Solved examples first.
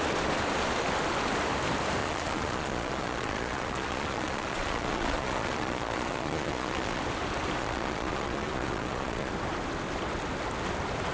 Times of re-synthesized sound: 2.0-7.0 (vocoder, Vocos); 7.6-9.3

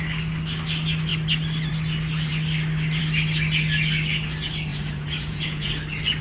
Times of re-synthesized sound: 4.7-5.7 (vocoder, Vocos)

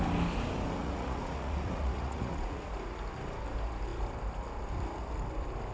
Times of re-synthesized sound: 0.8-2.7 (vocoder, Vocos)

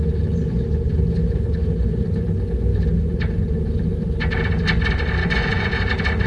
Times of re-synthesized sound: 5.2-5.7 (vocoder, Vocos)